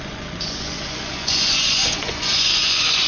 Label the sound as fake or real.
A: fake